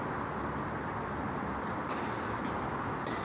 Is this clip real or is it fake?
real